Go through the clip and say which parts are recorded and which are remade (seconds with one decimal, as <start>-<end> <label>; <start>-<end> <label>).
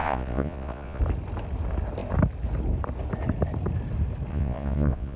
0.0-1.0 remade; 1.0-4.3 recorded; 4.3-5.2 remade